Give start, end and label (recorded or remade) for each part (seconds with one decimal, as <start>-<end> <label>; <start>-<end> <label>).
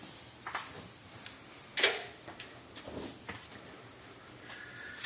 0.0-5.1 recorded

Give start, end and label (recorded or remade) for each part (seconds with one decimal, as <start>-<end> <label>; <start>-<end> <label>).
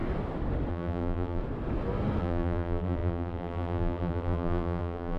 0.0-0.7 recorded; 0.7-1.4 remade; 1.4-2.2 recorded; 2.2-5.2 remade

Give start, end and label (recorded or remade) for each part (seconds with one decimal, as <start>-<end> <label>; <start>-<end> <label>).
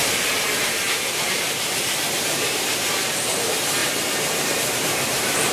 0.0-5.5 remade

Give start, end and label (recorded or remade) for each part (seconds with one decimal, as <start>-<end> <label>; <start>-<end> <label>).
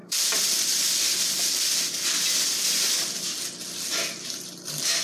0.0-0.9 remade; 0.9-5.0 recorded